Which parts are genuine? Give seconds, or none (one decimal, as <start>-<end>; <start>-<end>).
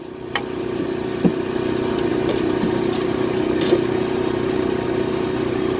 0.0-5.8